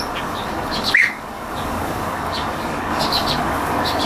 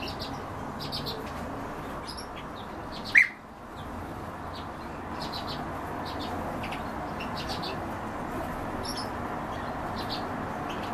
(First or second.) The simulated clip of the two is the first